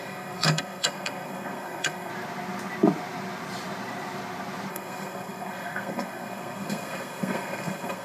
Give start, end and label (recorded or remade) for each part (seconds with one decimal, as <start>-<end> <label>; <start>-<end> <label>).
0.0-2.1 remade; 2.1-4.7 recorded; 4.7-8.0 remade